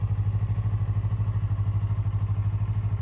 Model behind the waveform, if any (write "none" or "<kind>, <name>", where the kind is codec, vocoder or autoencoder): none